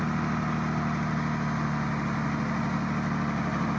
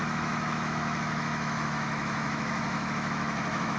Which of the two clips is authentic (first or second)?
first